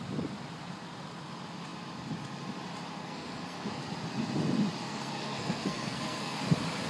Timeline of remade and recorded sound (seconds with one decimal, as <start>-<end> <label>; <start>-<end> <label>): 0.0-3.0 recorded; 3.0-3.8 remade; 3.8-4.8 recorded; 4.8-6.4 remade; 6.4-6.9 recorded